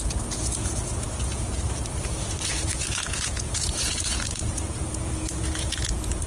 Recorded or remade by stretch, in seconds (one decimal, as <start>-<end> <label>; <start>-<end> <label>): 0.0-1.6 remade; 1.6-2.5 recorded; 2.5-6.3 remade